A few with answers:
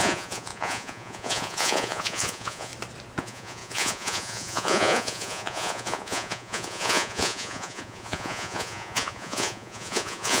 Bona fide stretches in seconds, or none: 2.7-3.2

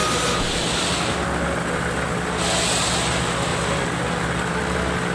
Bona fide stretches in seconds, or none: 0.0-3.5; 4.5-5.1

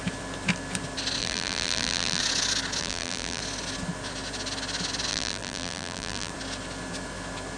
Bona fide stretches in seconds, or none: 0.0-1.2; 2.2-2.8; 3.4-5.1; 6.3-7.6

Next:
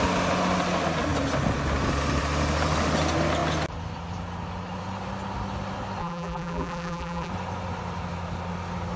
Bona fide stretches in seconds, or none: 0.0-6.0; 7.3-9.0

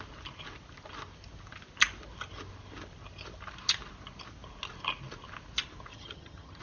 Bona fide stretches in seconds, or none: 0.0-5.9